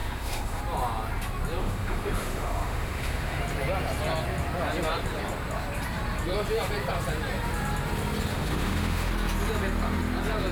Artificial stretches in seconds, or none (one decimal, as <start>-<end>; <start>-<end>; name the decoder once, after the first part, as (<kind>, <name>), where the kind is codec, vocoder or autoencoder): 0.0-0.6 (autoencoder, DAC-VAE); 1.6-3.4; 8.3-9.1